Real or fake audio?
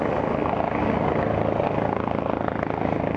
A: real